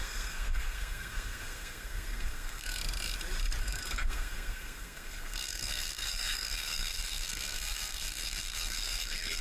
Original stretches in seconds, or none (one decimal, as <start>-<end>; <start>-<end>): 2.8-3.6